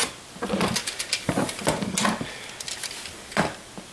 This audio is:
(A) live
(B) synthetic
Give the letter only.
A